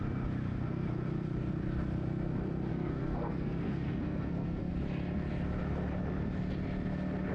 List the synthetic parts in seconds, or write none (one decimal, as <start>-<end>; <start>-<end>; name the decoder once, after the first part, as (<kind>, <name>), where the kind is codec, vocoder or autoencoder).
2.7-4.7 (codec, SNAC)